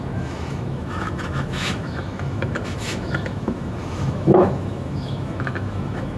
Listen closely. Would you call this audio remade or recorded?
remade